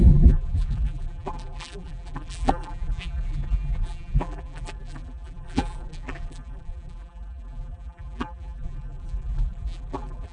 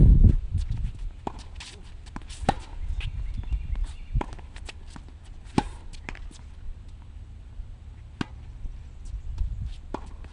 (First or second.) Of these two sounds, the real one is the second